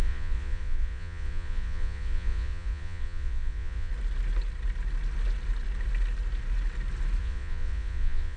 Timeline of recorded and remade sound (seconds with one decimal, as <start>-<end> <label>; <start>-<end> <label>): 0.0-3.9 remade; 3.9-7.2 recorded; 7.2-8.4 remade